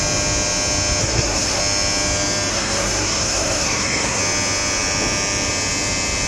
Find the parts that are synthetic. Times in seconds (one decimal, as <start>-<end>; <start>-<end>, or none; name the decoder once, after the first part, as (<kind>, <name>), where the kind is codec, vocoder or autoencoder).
1.0-1.6 (codec, SNAC); 2.5-4.2